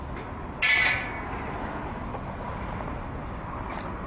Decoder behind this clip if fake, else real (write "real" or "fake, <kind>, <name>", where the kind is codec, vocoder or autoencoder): real